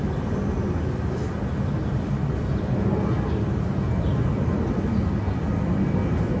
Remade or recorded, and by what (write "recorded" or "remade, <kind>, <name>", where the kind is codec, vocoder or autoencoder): recorded